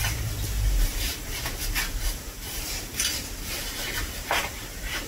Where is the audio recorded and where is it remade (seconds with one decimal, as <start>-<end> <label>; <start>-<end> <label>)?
0.0-1.1 remade; 1.1-2.0 recorded; 2.0-5.1 remade